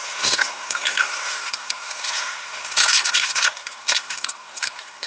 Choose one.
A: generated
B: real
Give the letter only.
A